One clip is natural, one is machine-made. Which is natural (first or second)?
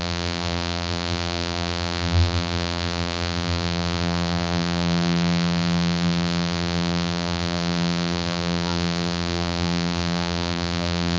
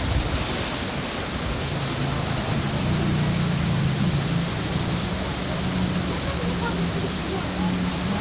second